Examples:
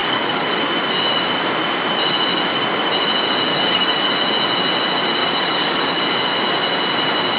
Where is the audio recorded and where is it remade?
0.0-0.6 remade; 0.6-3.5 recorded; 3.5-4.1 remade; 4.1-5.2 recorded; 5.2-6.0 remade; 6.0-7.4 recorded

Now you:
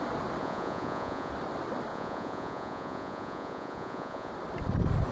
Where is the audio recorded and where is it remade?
0.0-0.4 recorded; 0.4-1.3 remade; 1.3-1.9 recorded; 1.9-4.3 remade; 4.3-5.1 recorded

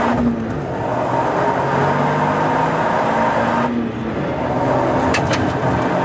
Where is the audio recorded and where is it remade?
0.0-6.0 recorded